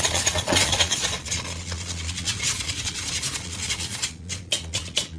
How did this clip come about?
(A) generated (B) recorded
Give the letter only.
A